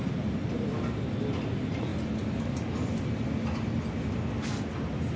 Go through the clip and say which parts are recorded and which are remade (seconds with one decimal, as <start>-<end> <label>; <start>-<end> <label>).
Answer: 0.0-5.2 recorded